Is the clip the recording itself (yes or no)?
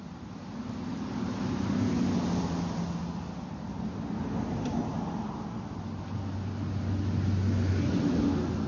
yes